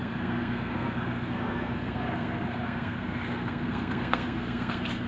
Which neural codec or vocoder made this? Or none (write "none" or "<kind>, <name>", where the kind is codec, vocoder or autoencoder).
codec, SNAC